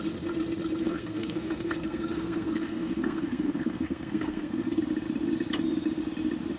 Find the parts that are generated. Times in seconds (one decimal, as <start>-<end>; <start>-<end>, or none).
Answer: 0.8-4.8